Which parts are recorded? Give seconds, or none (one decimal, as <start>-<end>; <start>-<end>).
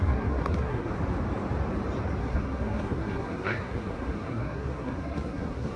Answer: 0.9-2.2